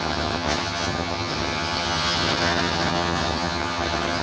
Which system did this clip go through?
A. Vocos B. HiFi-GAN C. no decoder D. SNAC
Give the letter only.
B